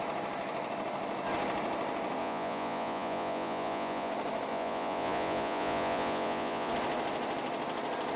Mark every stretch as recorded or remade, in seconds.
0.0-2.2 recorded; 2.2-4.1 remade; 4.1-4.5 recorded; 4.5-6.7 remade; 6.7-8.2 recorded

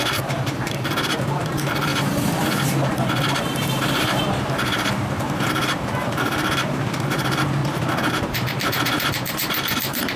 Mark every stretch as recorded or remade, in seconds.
0.0-1.9 remade; 1.9-3.4 recorded; 3.4-7.6 remade; 7.6-8.1 recorded; 8.1-10.2 remade

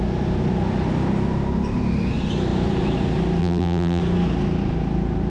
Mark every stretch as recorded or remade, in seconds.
0.0-3.4 recorded; 3.4-4.0 remade; 4.0-5.3 recorded

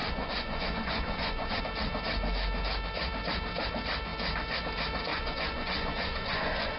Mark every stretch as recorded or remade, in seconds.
0.0-1.6 remade; 1.6-5.1 recorded; 5.1-6.8 remade